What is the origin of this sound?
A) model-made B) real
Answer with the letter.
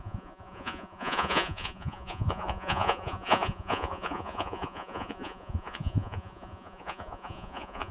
A